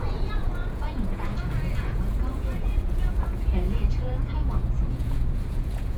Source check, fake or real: fake